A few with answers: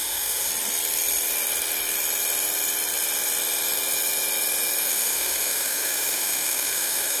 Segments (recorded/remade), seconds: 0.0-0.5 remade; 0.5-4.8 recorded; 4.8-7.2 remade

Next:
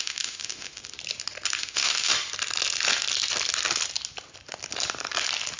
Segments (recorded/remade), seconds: 0.0-0.8 remade; 0.8-1.6 recorded; 1.6-2.1 remade; 2.1-5.6 recorded